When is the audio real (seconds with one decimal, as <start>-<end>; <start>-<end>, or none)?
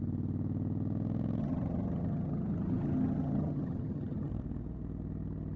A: 0.0-1.4; 4.3-5.6